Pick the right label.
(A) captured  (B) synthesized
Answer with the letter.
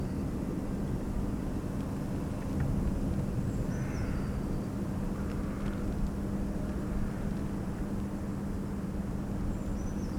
A